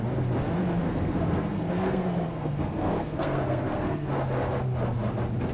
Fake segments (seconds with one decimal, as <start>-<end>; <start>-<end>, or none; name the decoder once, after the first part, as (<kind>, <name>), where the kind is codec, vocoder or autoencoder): 0.8-4.1 (codec, SNAC)